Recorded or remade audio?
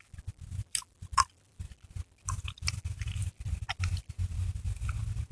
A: recorded